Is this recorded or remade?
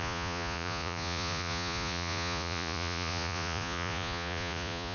remade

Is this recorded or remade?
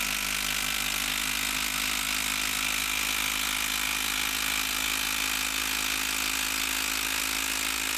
recorded